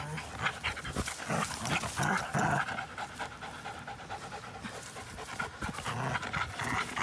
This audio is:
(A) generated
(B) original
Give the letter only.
B